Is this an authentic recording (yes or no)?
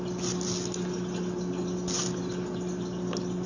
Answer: yes